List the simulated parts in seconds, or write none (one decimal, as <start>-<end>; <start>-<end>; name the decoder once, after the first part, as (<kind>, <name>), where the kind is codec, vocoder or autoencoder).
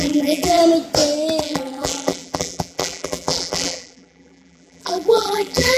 0.0-0.6 (vocoder, BigVGAN v2); 1.4-5.8